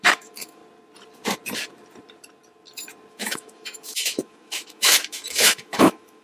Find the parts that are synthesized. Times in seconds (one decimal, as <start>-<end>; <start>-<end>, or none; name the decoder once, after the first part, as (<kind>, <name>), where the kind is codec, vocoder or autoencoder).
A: 0.0-0.6 (autoencoder, DAC-VAE); 3.1-6.2